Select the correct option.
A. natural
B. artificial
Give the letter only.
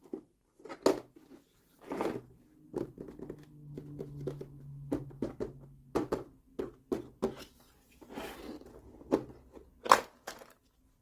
A